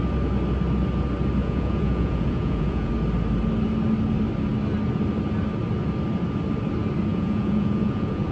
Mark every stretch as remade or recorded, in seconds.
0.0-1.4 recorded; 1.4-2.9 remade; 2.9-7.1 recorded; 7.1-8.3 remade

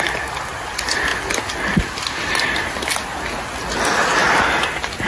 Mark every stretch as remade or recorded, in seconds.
0.0-5.1 recorded

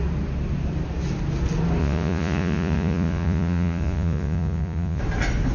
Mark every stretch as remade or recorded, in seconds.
0.0-1.8 recorded; 1.8-5.0 remade; 5.0-5.5 recorded